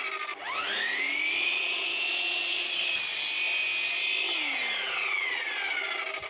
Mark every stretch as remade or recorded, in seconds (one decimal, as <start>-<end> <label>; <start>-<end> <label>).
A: 0.0-1.4 recorded; 1.4-3.0 remade; 3.0-6.3 recorded